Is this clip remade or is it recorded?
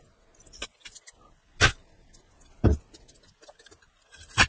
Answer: recorded